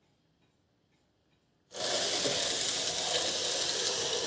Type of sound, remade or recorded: recorded